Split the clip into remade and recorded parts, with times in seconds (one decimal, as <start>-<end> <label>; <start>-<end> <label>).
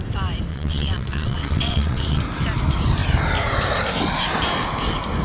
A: 0.0-0.5 recorded; 0.5-2.2 remade; 2.2-5.2 recorded